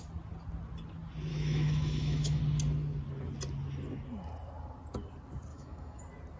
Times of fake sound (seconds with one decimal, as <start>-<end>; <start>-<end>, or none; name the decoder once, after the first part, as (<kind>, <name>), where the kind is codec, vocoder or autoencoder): 1.3-2.4 (autoencoder, DAC-VAE); 5.5-6.0